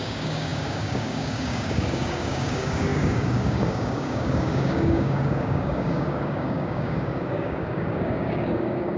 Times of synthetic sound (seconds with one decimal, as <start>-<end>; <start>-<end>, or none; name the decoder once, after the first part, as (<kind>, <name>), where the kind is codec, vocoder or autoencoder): 0.0-9.0 (codec, DAC)